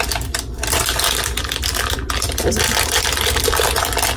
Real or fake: real